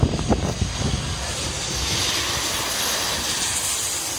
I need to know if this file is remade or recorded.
recorded